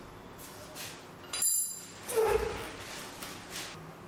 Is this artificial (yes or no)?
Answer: no